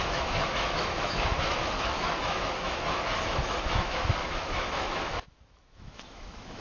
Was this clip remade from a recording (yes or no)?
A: yes